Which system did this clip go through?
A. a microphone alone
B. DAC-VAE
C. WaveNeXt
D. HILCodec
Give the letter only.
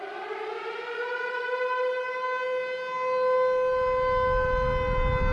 A